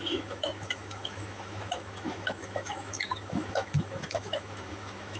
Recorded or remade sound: remade